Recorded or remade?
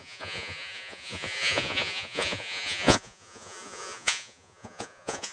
remade